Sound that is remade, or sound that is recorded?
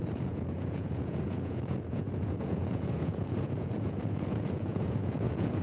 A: remade